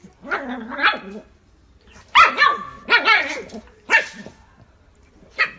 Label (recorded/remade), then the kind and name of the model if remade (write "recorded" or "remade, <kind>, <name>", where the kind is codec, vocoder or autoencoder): recorded